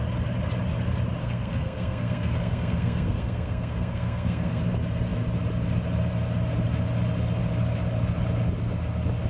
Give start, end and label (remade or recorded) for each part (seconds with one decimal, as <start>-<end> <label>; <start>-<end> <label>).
0.0-1.2 recorded; 1.2-4.6 remade; 4.6-9.3 recorded